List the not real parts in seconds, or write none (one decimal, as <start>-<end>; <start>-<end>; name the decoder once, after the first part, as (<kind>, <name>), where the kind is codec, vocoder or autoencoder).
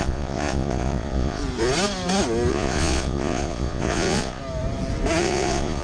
0.0-1.4 (vocoder, Vocos); 2.5-4.4; 5.2-5.8